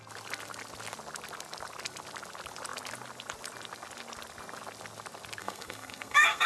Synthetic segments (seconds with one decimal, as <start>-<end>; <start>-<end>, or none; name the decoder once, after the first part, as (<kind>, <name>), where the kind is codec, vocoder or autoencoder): 5.4-6.5 (codec, SNAC)